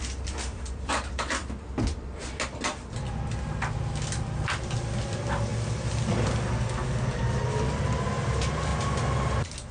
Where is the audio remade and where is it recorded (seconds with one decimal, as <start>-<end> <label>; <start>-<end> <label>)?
0.0-1.4 remade; 1.4-5.0 recorded; 5.0-5.5 remade; 5.5-7.2 recorded; 7.2-8.7 remade; 8.7-9.7 recorded